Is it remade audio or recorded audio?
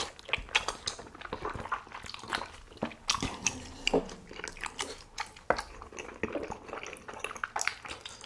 recorded